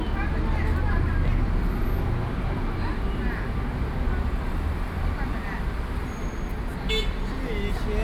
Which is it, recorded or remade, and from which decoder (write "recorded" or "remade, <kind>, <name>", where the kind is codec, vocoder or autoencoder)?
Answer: recorded